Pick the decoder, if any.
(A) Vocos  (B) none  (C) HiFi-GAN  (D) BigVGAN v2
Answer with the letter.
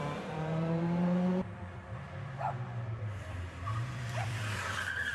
D